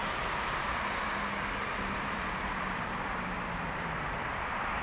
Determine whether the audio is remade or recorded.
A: remade